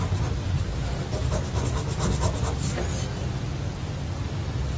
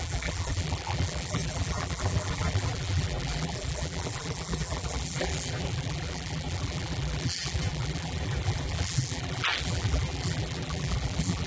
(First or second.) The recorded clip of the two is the first